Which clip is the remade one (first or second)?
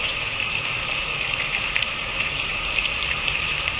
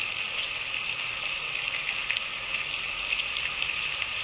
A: first